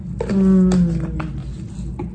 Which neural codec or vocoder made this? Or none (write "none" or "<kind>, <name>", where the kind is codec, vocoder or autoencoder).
none